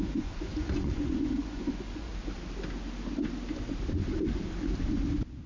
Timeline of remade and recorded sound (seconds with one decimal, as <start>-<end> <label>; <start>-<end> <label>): 0.0-2.1 remade; 2.1-5.5 recorded